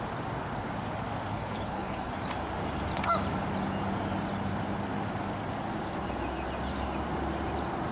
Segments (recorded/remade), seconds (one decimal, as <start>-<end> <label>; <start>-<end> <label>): 0.0-1.3 recorded; 1.3-2.1 remade; 2.1-7.9 recorded